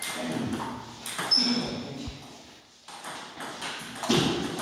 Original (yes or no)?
yes